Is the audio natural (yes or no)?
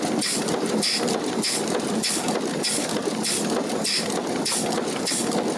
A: yes